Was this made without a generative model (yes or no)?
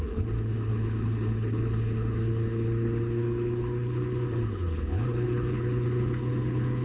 no